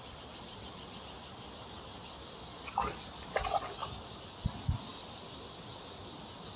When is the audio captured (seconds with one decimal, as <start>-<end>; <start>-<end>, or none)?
0.0-6.6